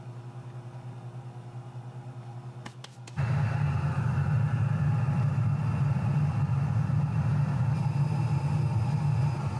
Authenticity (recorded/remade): recorded